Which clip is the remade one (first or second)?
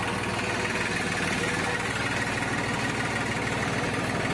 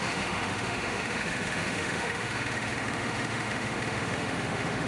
second